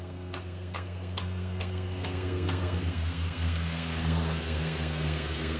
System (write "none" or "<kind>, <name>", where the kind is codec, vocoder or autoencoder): codec, SNAC